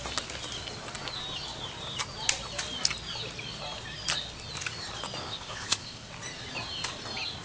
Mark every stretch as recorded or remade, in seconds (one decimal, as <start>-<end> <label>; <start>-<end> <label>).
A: 0.0-5.2 recorded; 5.2-6.1 remade; 6.1-7.4 recorded